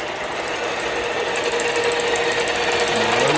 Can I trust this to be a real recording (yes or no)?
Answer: yes